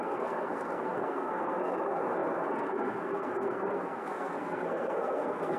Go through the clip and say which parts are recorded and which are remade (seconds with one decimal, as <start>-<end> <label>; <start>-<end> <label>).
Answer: 0.0-5.6 remade